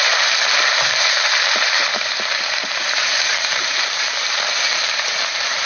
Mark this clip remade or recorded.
remade